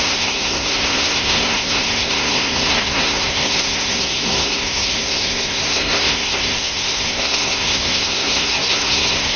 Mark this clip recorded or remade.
remade